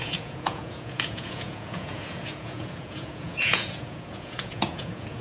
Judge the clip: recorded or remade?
remade